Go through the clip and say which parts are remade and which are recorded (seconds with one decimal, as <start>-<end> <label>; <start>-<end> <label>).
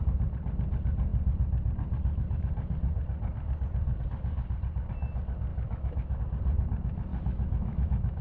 0.0-5.5 recorded; 5.5-6.2 remade; 6.2-7.1 recorded; 7.1-8.2 remade